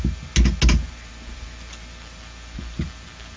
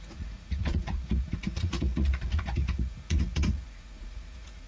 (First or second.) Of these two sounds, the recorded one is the first